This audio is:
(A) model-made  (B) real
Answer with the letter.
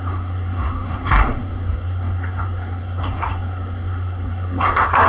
A